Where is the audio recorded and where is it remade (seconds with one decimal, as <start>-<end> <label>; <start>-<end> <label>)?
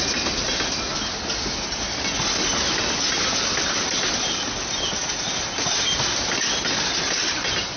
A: 0.0-7.8 recorded